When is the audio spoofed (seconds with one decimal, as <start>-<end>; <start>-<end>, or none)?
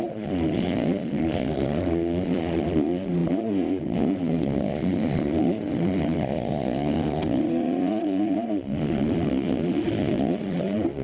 0.0-11.0